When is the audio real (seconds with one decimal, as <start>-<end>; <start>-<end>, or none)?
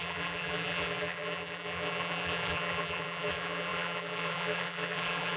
none